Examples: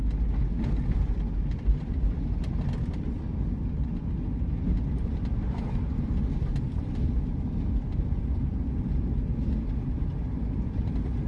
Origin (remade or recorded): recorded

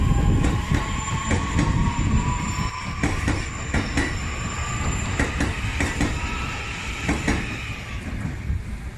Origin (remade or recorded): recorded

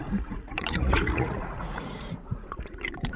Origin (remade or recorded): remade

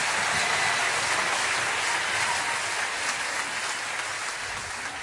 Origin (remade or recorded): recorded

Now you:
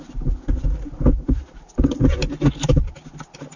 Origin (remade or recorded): recorded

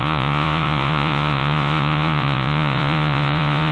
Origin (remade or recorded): remade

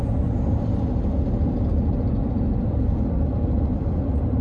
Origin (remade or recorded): recorded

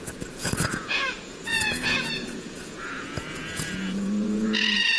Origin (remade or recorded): remade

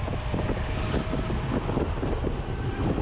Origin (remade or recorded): recorded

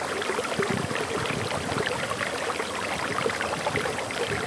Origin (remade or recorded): recorded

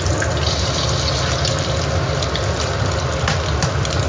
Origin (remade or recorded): recorded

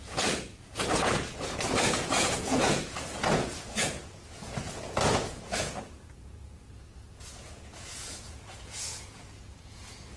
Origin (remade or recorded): remade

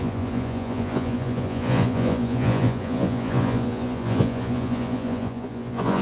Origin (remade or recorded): remade